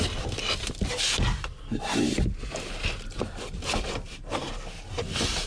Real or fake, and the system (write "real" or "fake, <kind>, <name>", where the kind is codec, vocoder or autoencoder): real